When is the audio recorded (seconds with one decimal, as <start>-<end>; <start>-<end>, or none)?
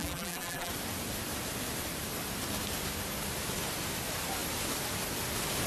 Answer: 0.7-5.7